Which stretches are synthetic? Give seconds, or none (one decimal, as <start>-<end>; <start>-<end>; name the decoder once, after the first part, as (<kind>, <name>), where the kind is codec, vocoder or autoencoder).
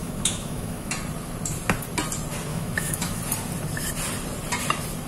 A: 0.0-0.9 (autoencoder, DAC-VAE); 2.5-3.2